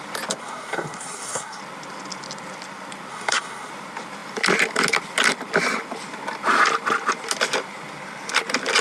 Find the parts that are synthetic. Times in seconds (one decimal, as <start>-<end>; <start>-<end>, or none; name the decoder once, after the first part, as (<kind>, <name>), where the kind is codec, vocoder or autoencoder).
0.4-1.6 (codec, SNAC); 3.1-3.7